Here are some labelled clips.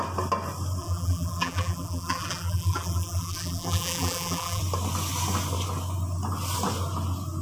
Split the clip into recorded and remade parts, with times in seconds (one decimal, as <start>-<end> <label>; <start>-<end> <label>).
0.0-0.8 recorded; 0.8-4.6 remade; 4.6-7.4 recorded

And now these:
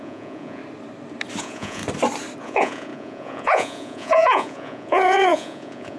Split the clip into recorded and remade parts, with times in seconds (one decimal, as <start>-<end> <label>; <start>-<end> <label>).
0.0-0.6 remade; 0.6-1.4 recorded; 1.4-1.8 remade; 1.8-2.4 recorded; 2.4-6.0 remade

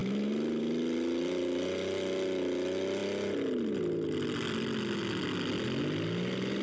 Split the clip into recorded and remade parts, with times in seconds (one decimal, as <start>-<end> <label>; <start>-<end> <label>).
0.0-6.6 recorded

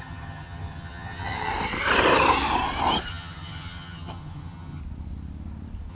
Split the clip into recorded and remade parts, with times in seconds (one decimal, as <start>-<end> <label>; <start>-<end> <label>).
0.0-1.5 remade; 1.5-3.1 recorded; 3.1-4.8 remade; 4.8-5.9 recorded

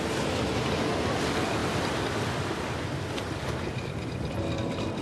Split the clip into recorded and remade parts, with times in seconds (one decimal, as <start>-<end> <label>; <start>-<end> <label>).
0.0-5.0 recorded

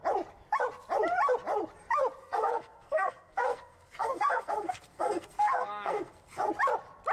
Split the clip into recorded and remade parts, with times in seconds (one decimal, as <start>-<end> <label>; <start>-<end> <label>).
0.0-2.2 recorded; 2.2-6.5 remade; 6.5-7.1 recorded

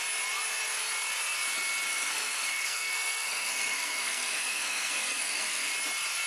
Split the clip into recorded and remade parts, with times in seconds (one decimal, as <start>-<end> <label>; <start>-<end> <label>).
0.0-1.9 recorded; 1.9-5.7 remade; 5.7-6.3 recorded